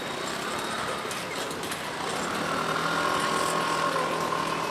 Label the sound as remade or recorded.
recorded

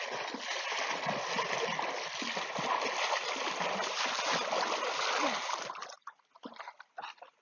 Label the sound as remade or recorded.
recorded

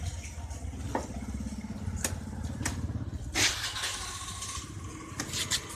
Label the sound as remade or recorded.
recorded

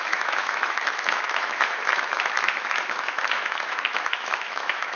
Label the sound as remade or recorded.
remade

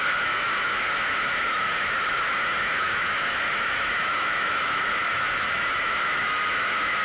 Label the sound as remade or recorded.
remade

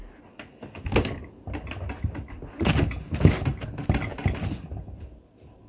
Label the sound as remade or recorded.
recorded